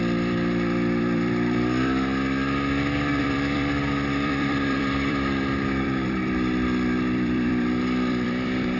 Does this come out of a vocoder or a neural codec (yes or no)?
yes